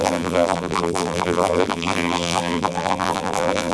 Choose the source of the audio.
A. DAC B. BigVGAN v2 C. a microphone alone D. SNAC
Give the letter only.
B